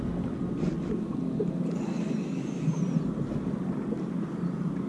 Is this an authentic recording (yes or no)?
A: yes